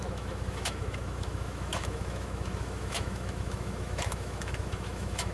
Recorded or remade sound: remade